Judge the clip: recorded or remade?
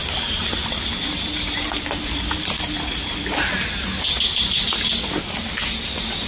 recorded